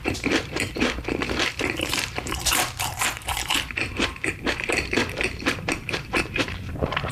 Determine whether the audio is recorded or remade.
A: remade